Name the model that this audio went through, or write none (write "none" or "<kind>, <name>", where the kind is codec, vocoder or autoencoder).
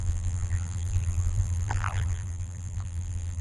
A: vocoder, BigVGAN v2